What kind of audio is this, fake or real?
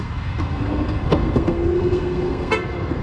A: fake